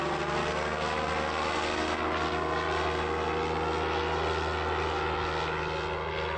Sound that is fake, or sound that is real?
real